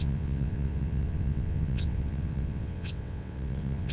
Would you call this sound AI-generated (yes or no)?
yes